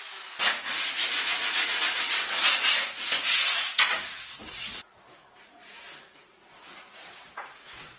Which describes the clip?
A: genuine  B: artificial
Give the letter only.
B